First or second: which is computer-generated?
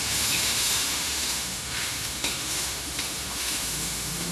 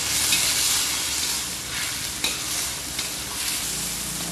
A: first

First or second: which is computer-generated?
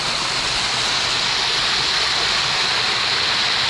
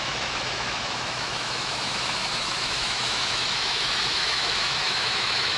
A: second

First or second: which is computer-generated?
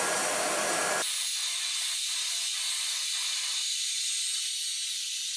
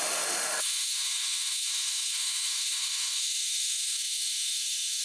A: second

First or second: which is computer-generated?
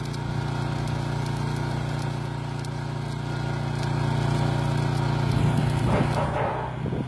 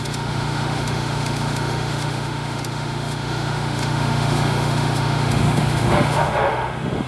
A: second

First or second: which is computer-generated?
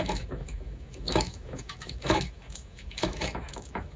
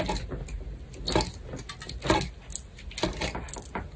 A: first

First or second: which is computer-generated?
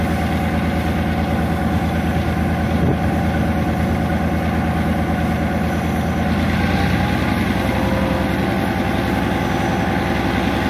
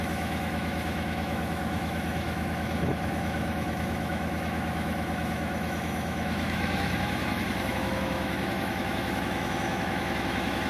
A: second